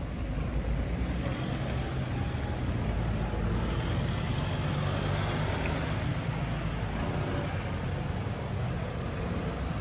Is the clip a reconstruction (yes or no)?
no